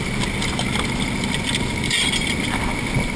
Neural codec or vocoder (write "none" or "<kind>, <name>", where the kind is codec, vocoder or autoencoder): none